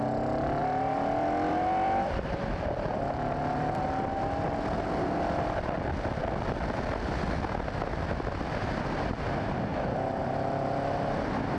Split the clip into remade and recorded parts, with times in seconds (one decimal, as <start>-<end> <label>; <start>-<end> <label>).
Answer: 0.0-0.6 recorded; 0.6-4.2 remade; 4.2-11.6 recorded